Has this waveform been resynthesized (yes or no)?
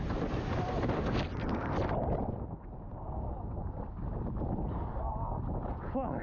no